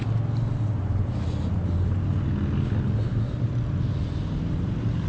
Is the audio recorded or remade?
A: recorded